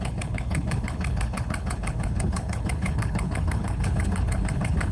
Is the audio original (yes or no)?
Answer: no